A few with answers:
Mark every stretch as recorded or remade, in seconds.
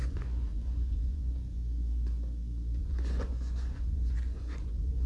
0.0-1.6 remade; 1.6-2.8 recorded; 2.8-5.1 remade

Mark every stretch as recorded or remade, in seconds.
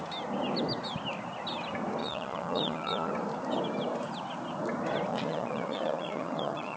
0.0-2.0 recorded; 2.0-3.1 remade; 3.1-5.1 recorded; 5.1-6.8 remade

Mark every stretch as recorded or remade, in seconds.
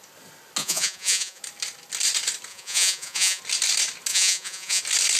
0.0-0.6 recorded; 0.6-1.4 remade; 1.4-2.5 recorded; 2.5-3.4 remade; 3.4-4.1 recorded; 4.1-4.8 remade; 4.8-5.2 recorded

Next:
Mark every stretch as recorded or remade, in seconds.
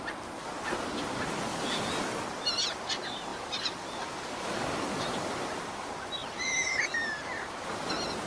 0.0-1.5 recorded; 1.5-2.0 remade; 2.0-3.3 recorded; 3.3-5.5 remade; 5.5-6.2 recorded; 6.2-7.9 remade; 7.9-8.3 recorded